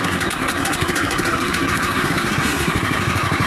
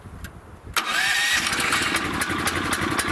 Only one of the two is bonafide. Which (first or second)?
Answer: second